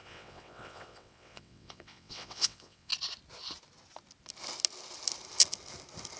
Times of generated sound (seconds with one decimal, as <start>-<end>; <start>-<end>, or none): 0.0-2.9